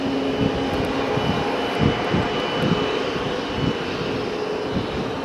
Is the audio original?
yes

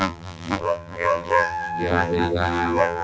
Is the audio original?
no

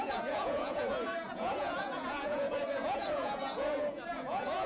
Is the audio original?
no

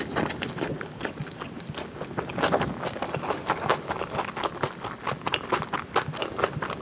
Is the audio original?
yes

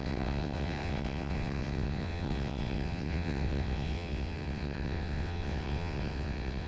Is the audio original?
no